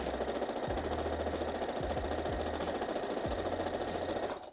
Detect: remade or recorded recorded